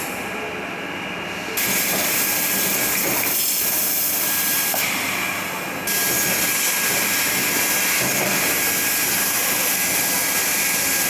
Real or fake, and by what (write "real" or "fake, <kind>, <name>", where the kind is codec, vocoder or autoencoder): real